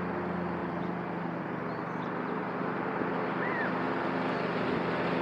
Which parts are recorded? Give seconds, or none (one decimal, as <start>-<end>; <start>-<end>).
0.0-0.6; 3.7-5.2

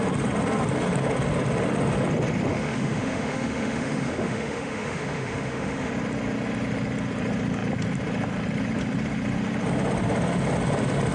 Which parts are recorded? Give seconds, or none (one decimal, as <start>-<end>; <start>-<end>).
0.0-2.5; 5.9-11.1